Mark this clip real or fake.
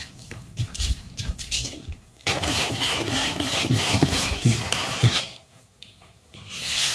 fake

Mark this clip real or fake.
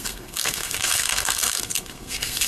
fake